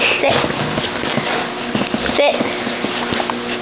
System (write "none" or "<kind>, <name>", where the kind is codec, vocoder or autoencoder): none